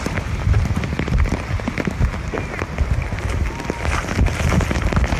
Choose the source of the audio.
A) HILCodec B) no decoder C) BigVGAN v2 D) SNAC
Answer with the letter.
B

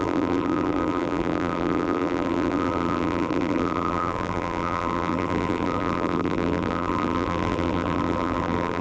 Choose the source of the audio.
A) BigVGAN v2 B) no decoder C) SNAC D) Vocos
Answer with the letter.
A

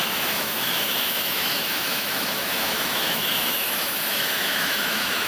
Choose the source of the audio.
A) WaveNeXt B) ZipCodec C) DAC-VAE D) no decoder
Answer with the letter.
C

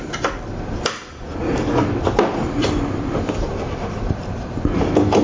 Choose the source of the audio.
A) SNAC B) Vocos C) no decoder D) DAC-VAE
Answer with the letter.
C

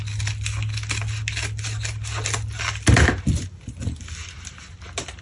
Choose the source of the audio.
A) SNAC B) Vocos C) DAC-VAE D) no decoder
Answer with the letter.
D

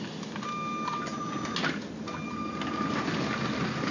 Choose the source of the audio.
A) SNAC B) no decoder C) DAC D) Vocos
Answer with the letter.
B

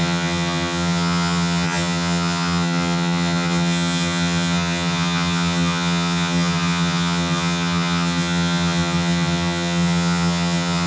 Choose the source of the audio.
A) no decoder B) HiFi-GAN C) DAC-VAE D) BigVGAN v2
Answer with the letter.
B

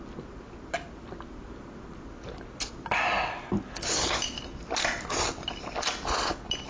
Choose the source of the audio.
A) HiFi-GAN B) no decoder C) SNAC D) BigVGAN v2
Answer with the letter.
B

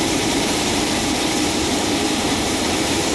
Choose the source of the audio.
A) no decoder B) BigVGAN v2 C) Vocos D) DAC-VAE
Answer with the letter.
B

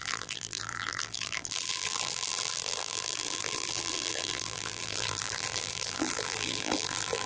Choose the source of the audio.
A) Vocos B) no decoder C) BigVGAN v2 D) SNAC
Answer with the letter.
C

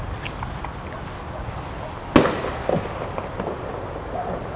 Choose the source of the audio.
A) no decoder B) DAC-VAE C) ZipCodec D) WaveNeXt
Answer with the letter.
A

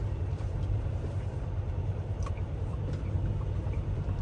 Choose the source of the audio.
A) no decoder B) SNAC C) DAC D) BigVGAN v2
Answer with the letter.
D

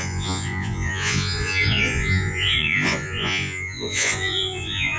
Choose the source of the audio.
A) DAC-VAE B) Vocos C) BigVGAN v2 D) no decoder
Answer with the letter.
B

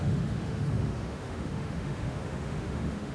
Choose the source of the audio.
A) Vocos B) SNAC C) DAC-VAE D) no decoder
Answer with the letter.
C